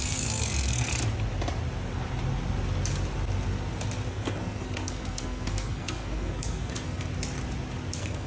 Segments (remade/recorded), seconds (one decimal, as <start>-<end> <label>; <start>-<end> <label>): 0.0-0.9 remade; 0.9-4.1 recorded; 4.1-7.1 remade; 7.1-7.9 recorded; 7.9-8.3 remade